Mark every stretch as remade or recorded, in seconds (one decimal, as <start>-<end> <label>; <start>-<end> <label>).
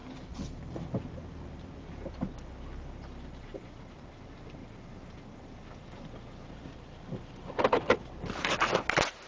0.0-9.3 recorded